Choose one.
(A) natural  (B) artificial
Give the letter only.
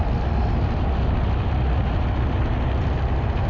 A